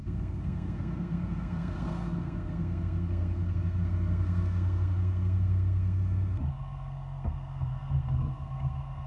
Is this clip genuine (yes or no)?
no